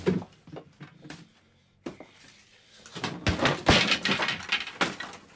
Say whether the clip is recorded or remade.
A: recorded